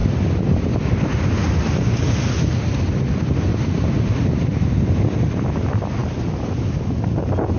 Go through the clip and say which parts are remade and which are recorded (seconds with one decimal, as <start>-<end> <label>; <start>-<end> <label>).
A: 0.0-7.6 recorded